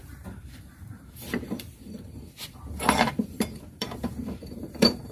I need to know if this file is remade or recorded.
remade